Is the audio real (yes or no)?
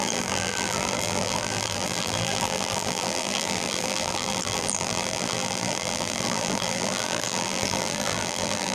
no